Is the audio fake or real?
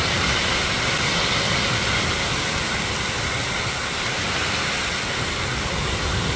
real